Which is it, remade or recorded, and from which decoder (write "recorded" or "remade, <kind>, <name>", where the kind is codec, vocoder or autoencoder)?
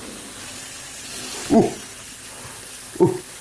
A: recorded